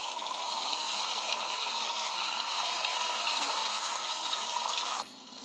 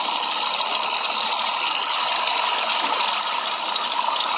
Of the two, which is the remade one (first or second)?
first